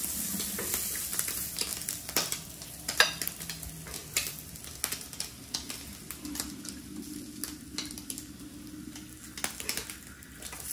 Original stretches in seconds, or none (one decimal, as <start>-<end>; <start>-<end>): 0.0-1.7; 3.4-4.0; 4.5-10.7